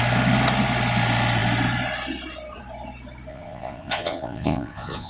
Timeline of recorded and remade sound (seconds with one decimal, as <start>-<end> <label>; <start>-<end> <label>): 0.0-3.3 recorded; 3.3-5.1 remade